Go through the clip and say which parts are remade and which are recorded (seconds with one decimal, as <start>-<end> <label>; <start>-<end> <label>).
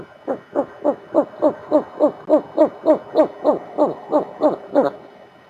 0.0-1.7 remade; 1.7-3.5 recorded; 3.5-5.5 remade